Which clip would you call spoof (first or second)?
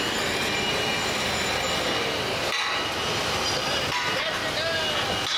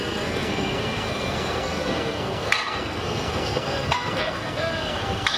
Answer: second